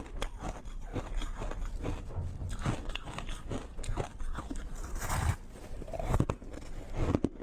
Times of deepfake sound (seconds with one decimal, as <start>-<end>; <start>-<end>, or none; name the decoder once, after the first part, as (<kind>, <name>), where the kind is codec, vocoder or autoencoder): none